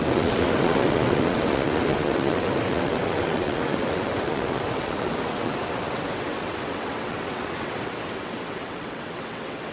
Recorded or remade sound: remade